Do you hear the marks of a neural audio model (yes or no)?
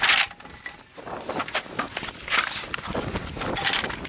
no